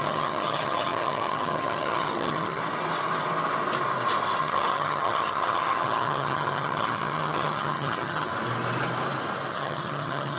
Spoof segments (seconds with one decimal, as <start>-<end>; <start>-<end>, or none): 0.0-2.6; 4.4-8.3; 9.5-10.4